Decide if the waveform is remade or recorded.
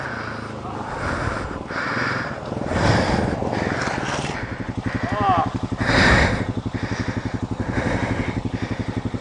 recorded